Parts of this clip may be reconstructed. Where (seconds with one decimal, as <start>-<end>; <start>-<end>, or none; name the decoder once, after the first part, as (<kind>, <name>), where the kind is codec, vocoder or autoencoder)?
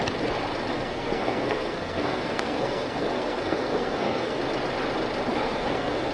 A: 0.7-4.4 (codec, SNAC); 5.3-6.1